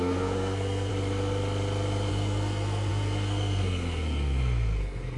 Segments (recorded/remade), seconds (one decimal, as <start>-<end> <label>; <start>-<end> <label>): 0.0-0.9 remade; 0.9-2.1 recorded; 2.1-5.2 remade